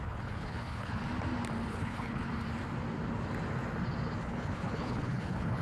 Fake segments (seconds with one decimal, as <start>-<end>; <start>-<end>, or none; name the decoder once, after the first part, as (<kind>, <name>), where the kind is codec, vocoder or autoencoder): 0.0-1.0 (codec, HILCodec); 1.7-2.3; 4.2-5.6